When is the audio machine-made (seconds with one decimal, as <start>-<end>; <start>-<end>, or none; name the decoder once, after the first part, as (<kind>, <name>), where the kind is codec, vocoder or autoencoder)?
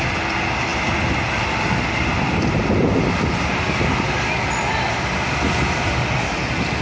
none